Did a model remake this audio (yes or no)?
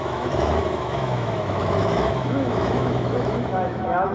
yes